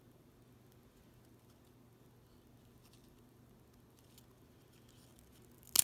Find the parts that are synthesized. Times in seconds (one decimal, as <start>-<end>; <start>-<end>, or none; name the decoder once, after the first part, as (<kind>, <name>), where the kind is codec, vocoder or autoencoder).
none